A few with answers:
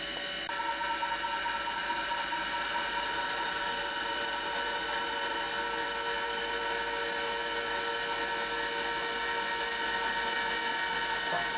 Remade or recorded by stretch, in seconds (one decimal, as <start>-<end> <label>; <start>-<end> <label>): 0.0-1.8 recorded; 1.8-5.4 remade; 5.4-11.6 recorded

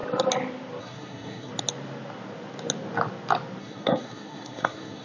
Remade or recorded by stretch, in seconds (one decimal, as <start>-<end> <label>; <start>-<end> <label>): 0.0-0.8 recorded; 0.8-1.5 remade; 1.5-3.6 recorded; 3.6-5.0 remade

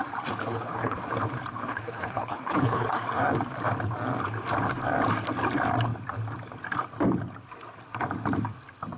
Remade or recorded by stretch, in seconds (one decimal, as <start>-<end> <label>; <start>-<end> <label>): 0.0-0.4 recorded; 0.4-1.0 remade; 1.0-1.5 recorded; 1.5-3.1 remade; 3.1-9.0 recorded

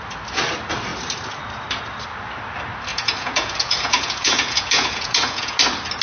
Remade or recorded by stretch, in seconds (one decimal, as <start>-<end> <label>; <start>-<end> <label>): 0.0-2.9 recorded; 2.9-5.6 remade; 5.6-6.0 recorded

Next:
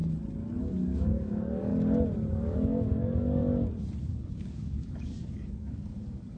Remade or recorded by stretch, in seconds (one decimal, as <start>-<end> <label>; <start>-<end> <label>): 0.0-0.6 recorded; 0.6-1.7 remade; 1.7-2.3 recorded; 2.3-3.4 remade; 3.4-4.0 recorded; 4.0-6.4 remade

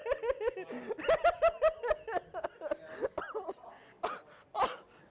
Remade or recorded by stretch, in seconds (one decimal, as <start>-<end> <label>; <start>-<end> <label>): 0.0-5.1 recorded

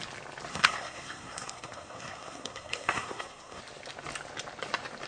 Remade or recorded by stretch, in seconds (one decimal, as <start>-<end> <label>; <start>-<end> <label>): 0.0-0.5 recorded; 0.5-3.6 remade; 3.6-5.1 recorded